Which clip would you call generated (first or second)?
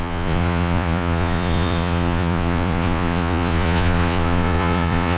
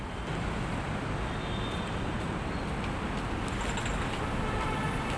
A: first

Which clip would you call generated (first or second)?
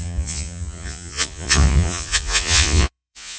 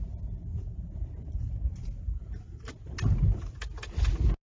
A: first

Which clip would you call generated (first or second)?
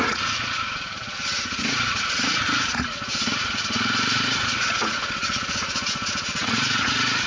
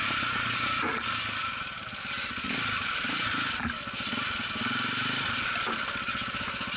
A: first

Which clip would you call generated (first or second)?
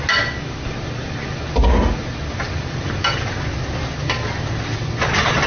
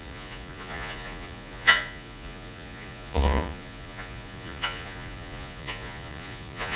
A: second